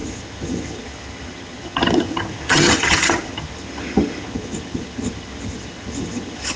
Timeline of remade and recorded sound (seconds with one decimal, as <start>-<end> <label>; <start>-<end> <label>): 0.0-6.6 remade